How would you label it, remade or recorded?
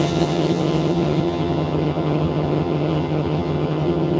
remade